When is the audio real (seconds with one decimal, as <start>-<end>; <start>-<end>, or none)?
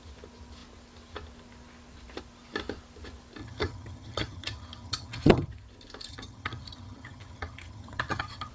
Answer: 0.0-3.4; 5.5-6.1